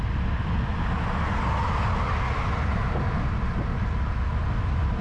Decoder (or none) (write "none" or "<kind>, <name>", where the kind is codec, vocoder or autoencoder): none